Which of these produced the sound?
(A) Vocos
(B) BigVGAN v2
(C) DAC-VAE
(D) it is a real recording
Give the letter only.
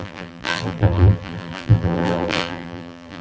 B